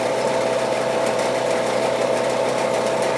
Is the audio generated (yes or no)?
yes